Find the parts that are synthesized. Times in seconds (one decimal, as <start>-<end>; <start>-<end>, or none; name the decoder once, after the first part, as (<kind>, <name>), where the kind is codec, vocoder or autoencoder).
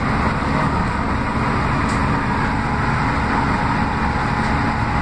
0.4-1.1 (codec, DAC)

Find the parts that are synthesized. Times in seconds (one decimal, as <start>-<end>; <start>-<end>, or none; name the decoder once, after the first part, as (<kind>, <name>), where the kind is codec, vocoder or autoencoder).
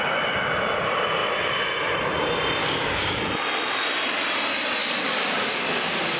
2.6-3.2 (codec, DAC); 4.8-5.6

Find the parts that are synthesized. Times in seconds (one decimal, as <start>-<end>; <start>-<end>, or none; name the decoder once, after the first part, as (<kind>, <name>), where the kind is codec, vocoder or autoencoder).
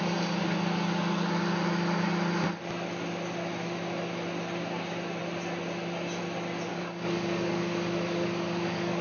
6.7-9.0 (codec, DAC)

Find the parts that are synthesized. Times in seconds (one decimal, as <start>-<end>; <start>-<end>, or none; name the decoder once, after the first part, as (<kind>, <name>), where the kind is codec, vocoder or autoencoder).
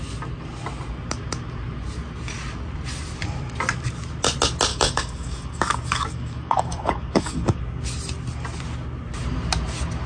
4.7-7.6 (codec, DAC)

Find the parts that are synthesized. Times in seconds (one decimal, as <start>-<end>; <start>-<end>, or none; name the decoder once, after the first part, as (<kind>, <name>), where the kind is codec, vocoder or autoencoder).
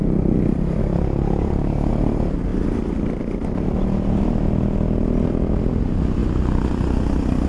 0.8-1.9 (codec, DAC)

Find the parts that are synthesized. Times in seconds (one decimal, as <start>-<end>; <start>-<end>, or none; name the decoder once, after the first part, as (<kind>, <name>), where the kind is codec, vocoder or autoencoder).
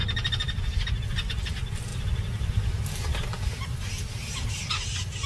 none